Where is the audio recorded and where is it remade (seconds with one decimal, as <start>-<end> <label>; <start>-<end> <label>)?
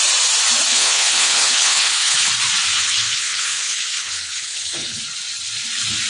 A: 0.0-0.7 recorded; 0.7-2.3 remade; 2.3-2.7 recorded; 2.7-5.0 remade; 5.0-6.1 recorded